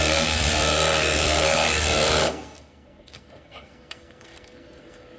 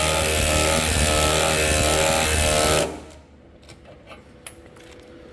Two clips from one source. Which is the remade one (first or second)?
first